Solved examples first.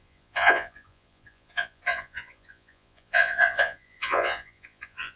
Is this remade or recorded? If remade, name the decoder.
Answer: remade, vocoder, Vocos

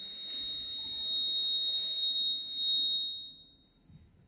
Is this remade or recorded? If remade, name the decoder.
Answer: recorded